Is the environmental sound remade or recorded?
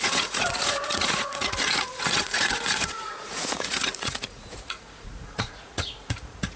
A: remade